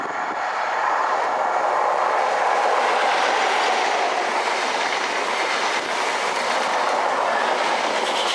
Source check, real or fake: real